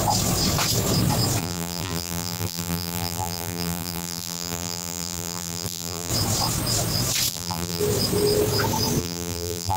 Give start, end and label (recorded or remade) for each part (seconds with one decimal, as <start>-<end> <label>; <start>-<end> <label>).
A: 0.0-1.4 recorded; 1.4-6.1 remade; 6.1-7.3 recorded; 7.3-7.8 remade; 7.8-9.0 recorded; 9.0-9.8 remade